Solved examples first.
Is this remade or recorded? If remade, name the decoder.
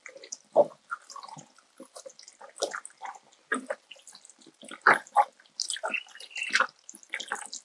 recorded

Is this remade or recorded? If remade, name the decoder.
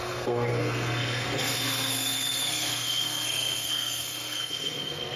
remade, codec, SNAC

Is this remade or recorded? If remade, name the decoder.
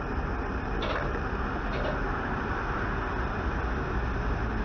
recorded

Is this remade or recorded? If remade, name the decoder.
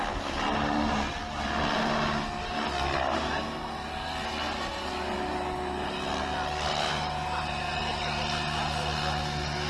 recorded